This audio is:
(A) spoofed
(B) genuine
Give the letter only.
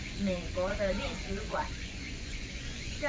A